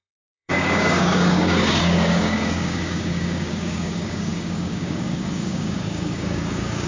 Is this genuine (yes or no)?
no